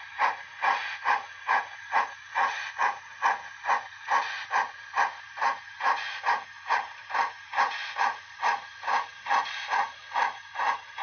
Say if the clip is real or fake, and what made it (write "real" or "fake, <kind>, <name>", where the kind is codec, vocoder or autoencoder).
fake, vocoder, Vocos